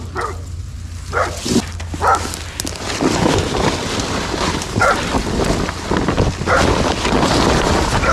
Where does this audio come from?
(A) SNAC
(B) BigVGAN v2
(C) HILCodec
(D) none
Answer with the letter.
D